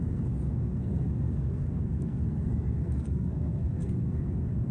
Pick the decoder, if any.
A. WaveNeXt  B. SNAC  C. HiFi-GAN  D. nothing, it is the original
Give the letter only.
B